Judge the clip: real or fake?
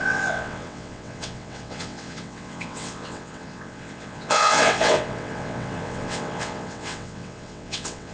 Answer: fake